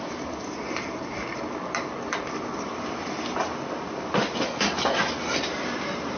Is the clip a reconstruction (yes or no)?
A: no